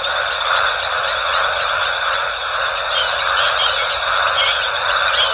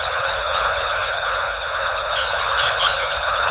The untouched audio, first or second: first